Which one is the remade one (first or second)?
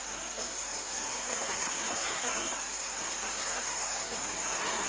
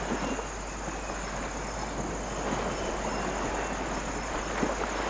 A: first